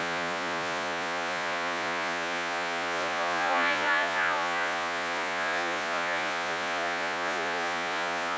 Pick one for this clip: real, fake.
fake